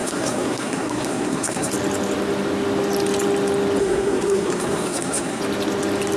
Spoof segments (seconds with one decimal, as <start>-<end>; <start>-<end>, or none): 0.0-1.7; 3.8-5.4